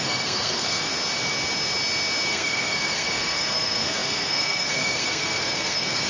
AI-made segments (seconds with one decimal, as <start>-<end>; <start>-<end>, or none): 0.0-0.9; 2.3-6.1